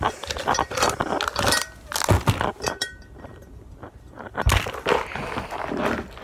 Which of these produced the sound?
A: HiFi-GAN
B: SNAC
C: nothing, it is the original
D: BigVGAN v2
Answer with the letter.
C